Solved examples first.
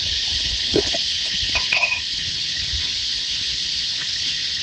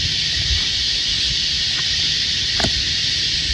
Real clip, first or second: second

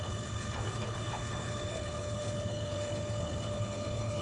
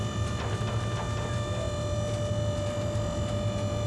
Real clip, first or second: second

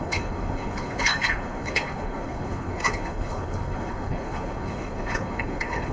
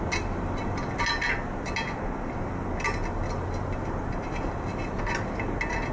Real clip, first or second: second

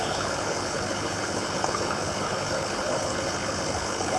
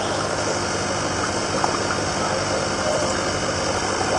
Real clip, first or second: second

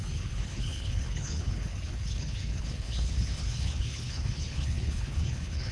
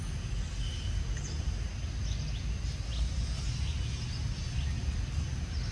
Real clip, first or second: second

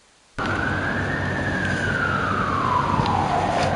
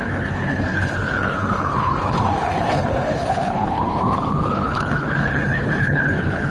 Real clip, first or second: first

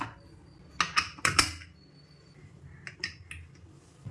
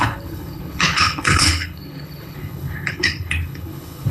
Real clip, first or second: first